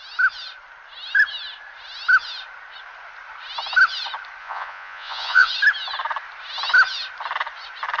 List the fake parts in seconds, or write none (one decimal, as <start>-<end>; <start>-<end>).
4.4-5.5

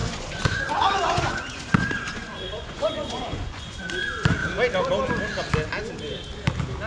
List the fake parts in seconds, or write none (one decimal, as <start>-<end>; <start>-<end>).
0.0-3.9

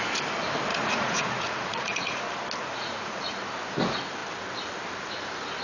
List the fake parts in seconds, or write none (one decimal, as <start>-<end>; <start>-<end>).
0.7-2.2; 2.6-3.4

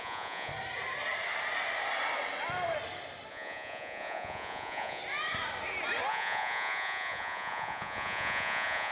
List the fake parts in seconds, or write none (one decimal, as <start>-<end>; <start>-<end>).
0.0-0.5; 3.3-5.0; 6.1-8.9

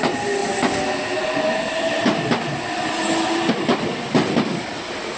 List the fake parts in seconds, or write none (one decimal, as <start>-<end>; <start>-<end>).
none

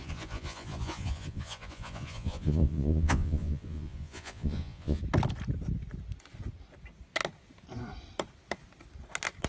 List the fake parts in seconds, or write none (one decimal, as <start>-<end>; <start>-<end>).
0.0-5.0

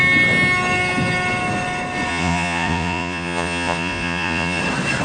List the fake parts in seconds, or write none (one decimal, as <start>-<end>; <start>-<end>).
2.1-4.6